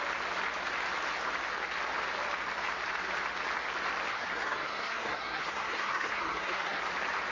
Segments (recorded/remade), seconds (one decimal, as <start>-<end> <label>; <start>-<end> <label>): 0.0-4.1 recorded; 4.1-6.8 remade; 6.8-7.3 recorded

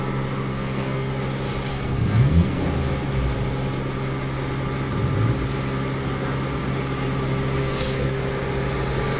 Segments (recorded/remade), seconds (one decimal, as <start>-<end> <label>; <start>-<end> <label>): 0.0-0.5 recorded; 0.5-1.1 remade; 1.1-1.7 recorded; 1.7-2.6 remade; 2.6-7.6 recorded; 7.6-8.2 remade; 8.2-9.2 recorded

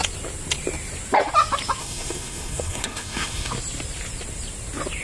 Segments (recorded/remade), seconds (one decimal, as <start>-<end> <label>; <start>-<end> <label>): 0.0-1.8 recorded; 1.8-3.5 remade; 3.5-5.0 recorded

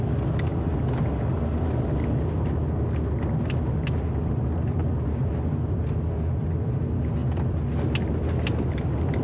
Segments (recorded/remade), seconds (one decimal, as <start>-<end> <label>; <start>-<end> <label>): 0.0-9.2 recorded

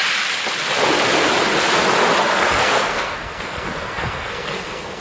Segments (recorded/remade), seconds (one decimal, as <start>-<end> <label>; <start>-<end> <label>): 0.0-2.2 recorded; 2.2-5.0 remade

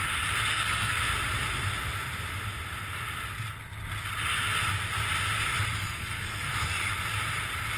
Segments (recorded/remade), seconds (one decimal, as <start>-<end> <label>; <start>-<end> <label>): 0.0-0.5 recorded; 0.5-1.0 remade; 1.0-5.8 recorded; 5.8-6.5 remade; 6.5-7.8 recorded

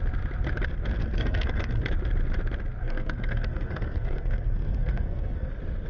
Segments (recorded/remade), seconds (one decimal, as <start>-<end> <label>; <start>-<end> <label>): 0.0-1.0 recorded; 1.0-1.8 remade; 1.8-2.8 recorded; 2.8-5.5 remade; 5.5-5.9 recorded

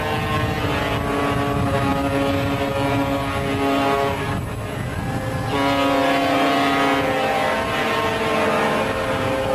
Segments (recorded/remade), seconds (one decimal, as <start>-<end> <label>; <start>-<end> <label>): 0.0-9.5 recorded